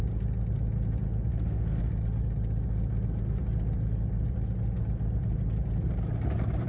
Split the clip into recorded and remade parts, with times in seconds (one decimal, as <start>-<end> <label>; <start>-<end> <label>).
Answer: 0.0-1.3 recorded; 1.3-1.8 remade; 1.8-6.7 recorded

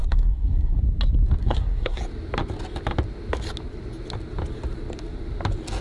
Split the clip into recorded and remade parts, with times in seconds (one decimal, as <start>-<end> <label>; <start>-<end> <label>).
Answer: 0.0-0.8 remade; 0.8-1.4 recorded; 1.4-2.0 remade; 2.0-5.8 recorded